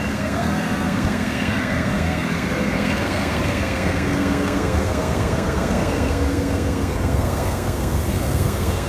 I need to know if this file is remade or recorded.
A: remade